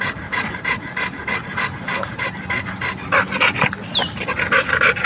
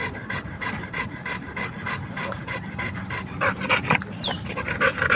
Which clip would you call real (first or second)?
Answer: first